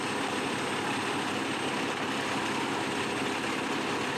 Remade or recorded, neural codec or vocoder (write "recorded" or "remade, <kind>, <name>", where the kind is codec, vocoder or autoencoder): recorded